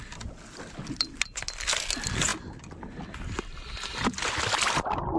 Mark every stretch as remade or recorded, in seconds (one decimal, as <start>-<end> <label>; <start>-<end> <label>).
0.0-5.2 recorded